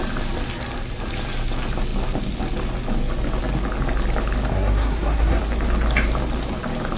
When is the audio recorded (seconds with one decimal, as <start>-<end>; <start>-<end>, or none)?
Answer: 0.0-4.5; 5.4-7.0

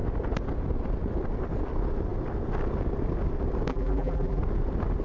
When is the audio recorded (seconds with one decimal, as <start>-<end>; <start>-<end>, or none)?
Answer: 0.0-3.7; 4.4-5.0

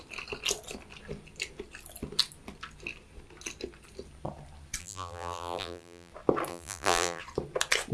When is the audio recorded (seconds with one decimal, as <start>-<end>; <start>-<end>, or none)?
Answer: 0.0-4.8; 6.1-6.5; 7.2-7.9

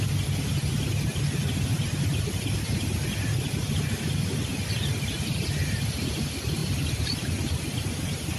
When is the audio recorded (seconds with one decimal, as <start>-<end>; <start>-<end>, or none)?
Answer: 0.0-8.4

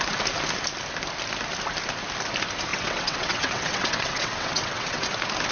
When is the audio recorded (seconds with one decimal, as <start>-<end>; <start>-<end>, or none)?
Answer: 0.0-2.7; 5.1-5.5